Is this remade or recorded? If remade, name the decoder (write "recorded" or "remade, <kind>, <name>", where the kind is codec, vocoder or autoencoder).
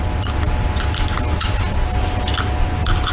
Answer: recorded